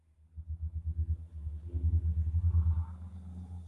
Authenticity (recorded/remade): recorded